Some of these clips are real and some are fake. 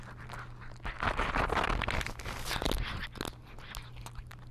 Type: real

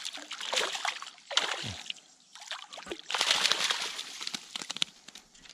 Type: real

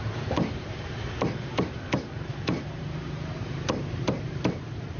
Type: fake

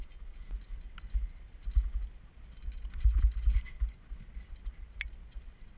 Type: real